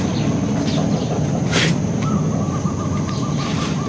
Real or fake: real